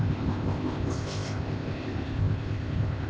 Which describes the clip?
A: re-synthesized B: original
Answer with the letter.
A